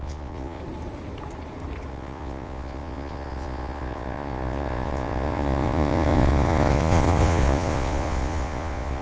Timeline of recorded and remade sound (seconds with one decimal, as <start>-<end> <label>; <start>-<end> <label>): 0.0-0.6 remade; 0.6-1.9 recorded; 1.9-9.0 remade